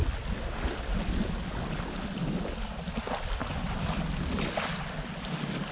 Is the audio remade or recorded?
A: recorded